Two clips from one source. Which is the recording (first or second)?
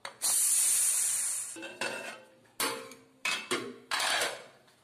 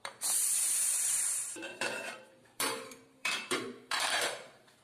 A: first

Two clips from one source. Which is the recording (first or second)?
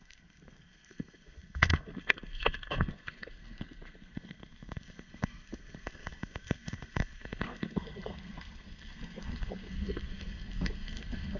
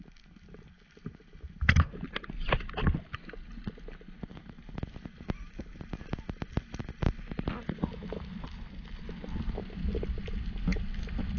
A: second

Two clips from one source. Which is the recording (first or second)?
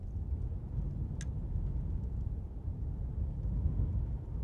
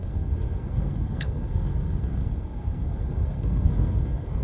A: first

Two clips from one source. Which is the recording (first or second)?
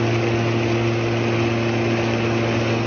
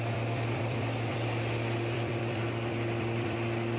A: first